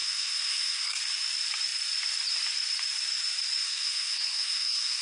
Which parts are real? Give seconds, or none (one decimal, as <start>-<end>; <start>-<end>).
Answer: 1.0-3.6